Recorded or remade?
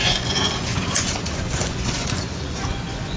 remade